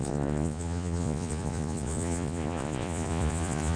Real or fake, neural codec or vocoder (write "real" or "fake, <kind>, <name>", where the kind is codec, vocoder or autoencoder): fake, vocoder, Vocos